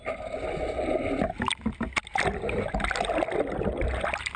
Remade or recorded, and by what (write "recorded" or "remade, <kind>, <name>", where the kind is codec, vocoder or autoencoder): recorded